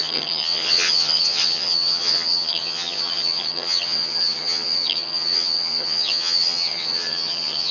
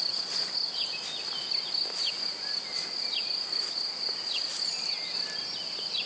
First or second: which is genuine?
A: second